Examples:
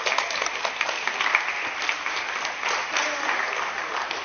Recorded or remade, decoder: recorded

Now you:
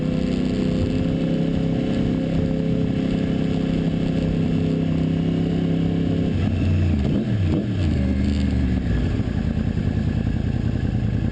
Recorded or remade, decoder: recorded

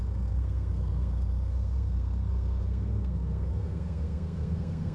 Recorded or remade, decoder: remade, codec, SNAC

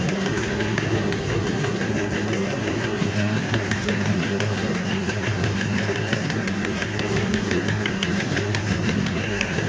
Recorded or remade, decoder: remade, codec, SNAC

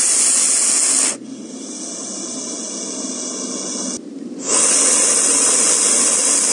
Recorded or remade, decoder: recorded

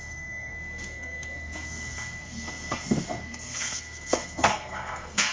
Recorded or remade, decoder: remade, codec, SNAC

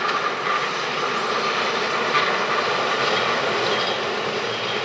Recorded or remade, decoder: recorded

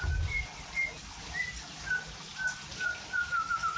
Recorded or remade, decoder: recorded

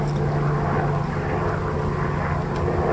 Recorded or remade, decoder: recorded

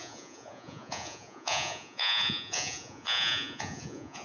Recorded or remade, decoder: remade, vocoder, Vocos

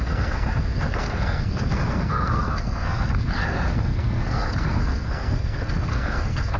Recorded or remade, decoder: remade, codec, SNAC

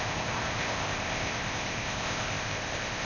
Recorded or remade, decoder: remade, codec, ZipCodec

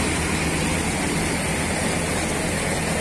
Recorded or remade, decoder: recorded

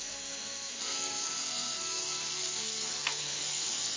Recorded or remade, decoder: remade, codec, SNAC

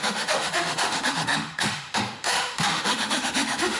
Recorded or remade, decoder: remade, autoencoder, DAC-VAE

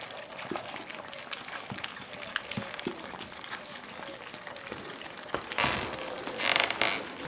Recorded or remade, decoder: recorded